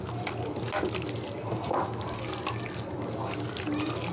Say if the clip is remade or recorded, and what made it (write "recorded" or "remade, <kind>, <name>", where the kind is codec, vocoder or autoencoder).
recorded